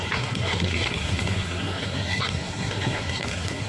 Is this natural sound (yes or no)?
no